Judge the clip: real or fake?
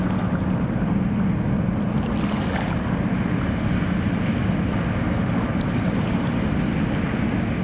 real